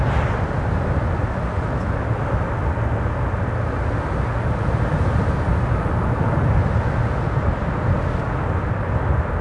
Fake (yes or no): no